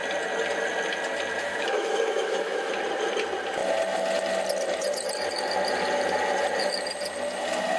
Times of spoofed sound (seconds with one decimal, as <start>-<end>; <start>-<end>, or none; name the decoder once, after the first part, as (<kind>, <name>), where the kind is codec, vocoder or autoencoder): 1.4-2.7 (autoencoder, DAC-VAE)